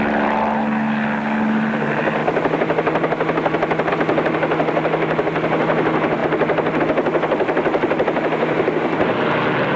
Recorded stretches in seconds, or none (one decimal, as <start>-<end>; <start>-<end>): 0.0-9.8